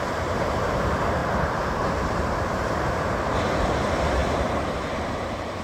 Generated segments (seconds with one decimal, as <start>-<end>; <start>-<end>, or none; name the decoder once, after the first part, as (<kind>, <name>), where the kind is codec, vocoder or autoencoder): 0.0-5.6 (vocoder, BigVGAN v2)

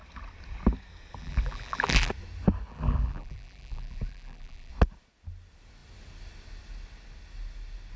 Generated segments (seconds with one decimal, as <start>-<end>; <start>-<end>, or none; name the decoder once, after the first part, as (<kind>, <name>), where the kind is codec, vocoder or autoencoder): 1.2-2.1 (vocoder, BigVGAN v2); 2.7-4.7